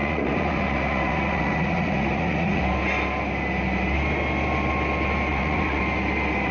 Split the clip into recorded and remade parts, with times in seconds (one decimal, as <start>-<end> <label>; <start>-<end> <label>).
0.0-2.6 remade; 2.6-5.3 recorded; 5.3-5.8 remade; 5.8-6.5 recorded